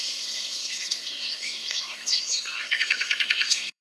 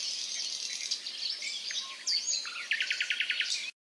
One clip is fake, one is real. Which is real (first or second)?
second